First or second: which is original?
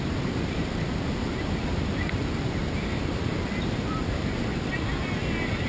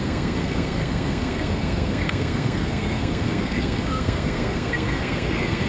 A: first